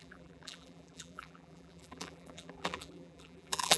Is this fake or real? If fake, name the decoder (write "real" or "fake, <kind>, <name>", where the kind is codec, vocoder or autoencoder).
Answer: fake, vocoder, BigVGAN v2